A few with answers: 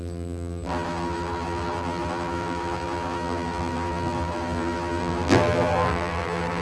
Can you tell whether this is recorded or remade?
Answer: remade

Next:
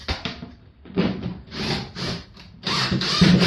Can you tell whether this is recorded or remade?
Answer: remade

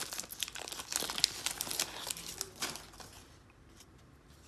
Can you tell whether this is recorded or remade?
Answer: recorded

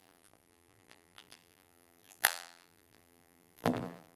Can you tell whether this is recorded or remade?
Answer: remade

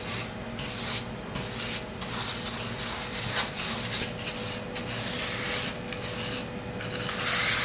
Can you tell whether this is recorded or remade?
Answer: recorded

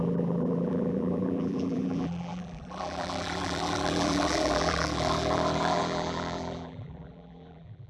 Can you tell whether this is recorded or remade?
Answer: remade